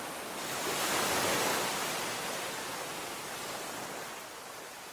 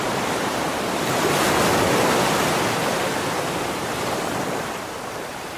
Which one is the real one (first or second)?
first